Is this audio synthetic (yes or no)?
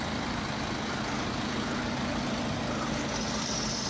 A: no